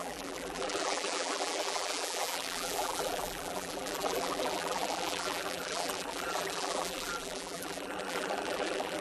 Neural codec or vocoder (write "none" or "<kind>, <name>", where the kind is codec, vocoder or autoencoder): vocoder, BigVGAN v2